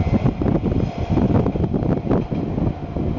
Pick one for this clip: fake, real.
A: real